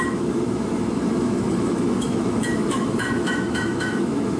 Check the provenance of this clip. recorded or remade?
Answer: remade